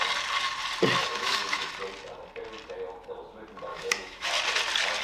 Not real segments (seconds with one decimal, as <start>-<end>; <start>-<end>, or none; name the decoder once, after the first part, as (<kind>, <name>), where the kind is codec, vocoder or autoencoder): 1.0-1.7 (autoencoder, DAC-VAE); 3.7-4.3